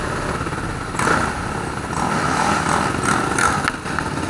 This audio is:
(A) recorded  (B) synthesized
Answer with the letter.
A